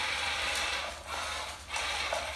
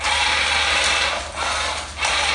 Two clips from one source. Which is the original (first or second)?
second